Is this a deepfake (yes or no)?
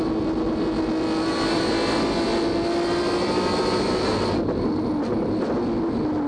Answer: no